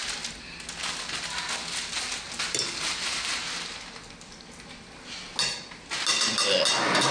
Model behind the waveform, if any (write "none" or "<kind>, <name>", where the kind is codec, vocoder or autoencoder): none